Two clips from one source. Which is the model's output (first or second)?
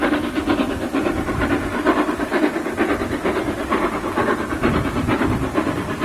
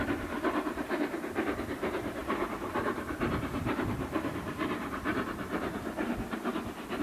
second